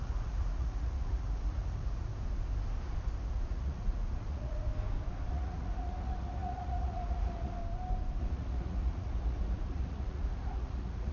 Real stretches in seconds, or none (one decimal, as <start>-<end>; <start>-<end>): 2.1-3.3; 4.7-5.3; 7.6-8.2

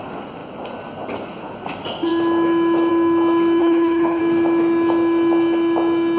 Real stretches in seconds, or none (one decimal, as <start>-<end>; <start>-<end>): 0.0-3.6; 4.2-6.2

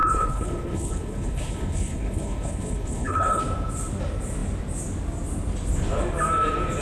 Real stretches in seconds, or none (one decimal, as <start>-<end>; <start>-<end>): 3.4-6.8